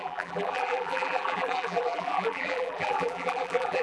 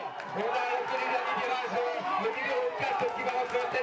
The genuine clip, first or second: second